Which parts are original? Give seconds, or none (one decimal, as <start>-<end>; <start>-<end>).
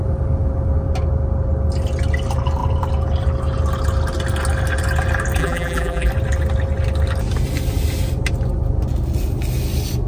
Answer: 0.0-5.4; 6.1-10.1